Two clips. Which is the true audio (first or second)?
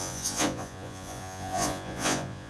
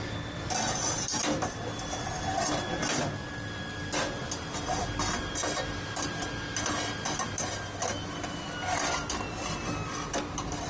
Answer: second